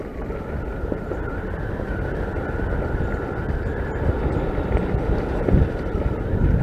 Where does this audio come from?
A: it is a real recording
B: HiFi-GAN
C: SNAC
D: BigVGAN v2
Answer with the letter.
A